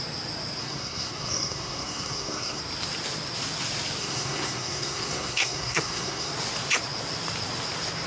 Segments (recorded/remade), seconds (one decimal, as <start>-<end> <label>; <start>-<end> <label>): 0.0-0.6 recorded; 0.6-2.6 remade; 2.6-4.0 recorded; 4.0-6.3 remade; 6.3-8.1 recorded